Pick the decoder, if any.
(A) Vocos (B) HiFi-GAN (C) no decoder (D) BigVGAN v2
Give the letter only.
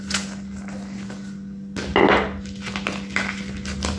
C